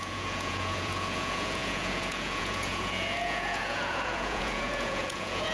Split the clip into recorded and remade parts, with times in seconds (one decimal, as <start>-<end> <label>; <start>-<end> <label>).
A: 0.0-5.5 remade